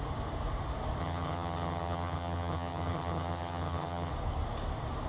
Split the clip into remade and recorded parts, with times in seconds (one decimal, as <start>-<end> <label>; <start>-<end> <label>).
0.0-1.0 recorded; 1.0-4.1 remade; 4.1-5.1 recorded